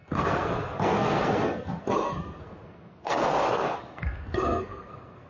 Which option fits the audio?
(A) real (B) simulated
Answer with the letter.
B